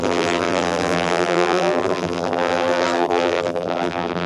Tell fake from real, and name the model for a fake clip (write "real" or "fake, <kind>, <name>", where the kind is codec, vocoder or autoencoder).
fake, vocoder, BigVGAN v2